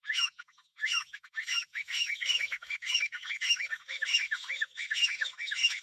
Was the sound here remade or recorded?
remade